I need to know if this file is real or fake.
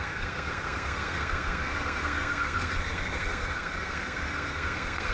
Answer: fake